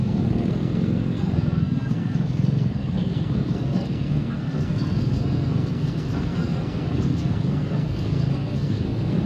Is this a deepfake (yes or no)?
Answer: yes